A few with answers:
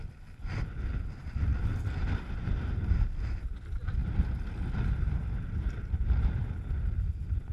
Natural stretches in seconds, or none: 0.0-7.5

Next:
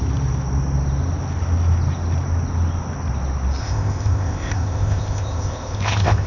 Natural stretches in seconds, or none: 0.0-3.6